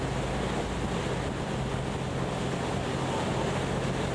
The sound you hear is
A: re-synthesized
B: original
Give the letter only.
B